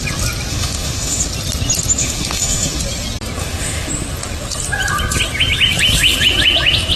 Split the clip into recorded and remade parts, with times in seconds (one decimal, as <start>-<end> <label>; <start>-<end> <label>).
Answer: 0.0-0.5 recorded; 0.5-1.2 remade; 1.2-2.0 recorded; 2.0-2.8 remade; 2.8-3.4 recorded; 3.4-3.9 remade; 3.9-7.0 recorded